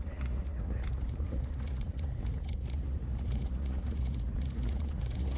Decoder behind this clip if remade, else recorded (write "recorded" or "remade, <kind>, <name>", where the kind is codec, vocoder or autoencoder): remade, vocoder, Vocos